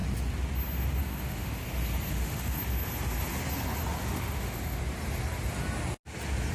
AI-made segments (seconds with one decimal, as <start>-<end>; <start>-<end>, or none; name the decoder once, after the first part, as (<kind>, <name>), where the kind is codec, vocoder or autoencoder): 1.0-1.6 (autoencoder, DAC-VAE); 2.1-2.6; 4.0-4.8